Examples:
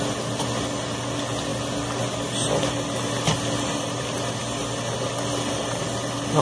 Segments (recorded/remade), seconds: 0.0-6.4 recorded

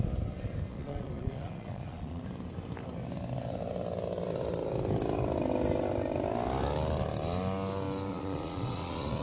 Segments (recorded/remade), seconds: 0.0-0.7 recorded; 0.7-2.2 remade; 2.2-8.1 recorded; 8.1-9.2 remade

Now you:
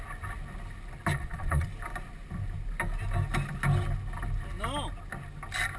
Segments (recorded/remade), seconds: 0.0-1.1 recorded; 1.1-1.7 remade; 1.7-5.8 recorded

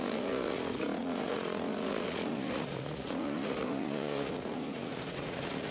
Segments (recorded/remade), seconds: 0.0-5.7 remade

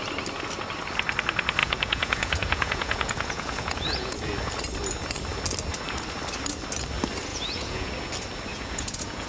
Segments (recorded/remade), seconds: 0.0-1.6 recorded; 1.6-4.3 remade; 4.3-7.3 recorded; 7.3-7.9 remade; 7.9-8.5 recorded; 8.5-9.3 remade

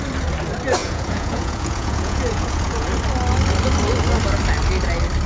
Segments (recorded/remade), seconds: 0.0-0.8 recorded; 0.8-2.9 remade; 2.9-5.3 recorded

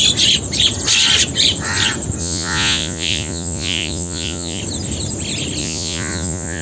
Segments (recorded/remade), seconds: 0.0-2.2 recorded; 2.2-4.6 remade; 4.6-5.6 recorded; 5.6-6.6 remade